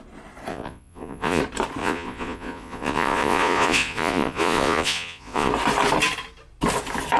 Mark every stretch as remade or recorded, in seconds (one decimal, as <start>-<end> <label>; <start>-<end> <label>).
0.0-0.5 recorded; 0.5-1.4 remade; 1.4-1.8 recorded; 1.8-5.5 remade; 5.5-7.2 recorded